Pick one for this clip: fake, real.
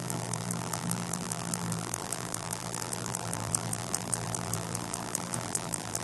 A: fake